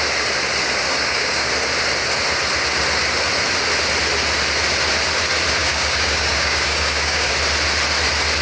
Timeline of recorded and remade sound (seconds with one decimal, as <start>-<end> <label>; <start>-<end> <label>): 0.0-0.9 recorded; 0.9-1.5 remade; 1.5-5.6 recorded; 5.6-7.3 remade; 7.3-8.4 recorded